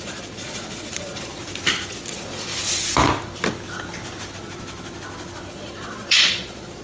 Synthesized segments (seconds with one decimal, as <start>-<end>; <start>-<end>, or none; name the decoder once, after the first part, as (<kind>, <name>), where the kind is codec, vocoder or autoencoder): 0.0-1.4 (vocoder, Vocos); 1.9-2.5; 5.5-6.8